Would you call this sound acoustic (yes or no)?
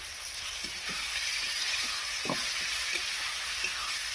yes